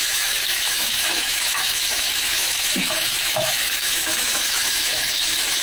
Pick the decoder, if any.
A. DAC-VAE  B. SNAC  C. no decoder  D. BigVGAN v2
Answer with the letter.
A